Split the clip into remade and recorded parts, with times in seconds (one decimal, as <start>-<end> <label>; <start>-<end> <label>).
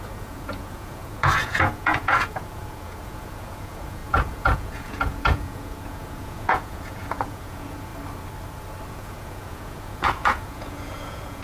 0.0-7.9 remade; 7.9-8.9 recorded; 8.9-11.4 remade